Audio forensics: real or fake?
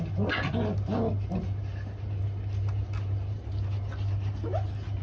real